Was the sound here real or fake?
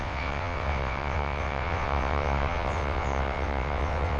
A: fake